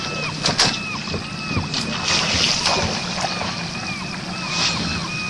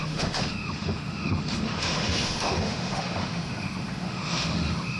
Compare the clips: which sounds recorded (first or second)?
first